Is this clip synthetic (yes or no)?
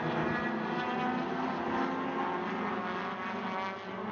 no